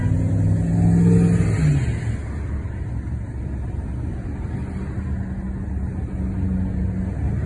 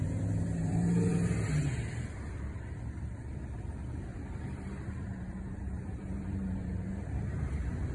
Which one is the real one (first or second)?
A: first